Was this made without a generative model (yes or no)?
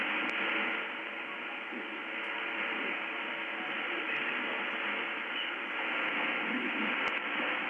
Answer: yes